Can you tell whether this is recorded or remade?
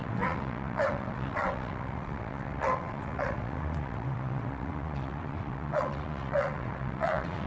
remade